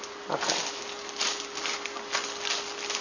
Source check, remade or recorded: recorded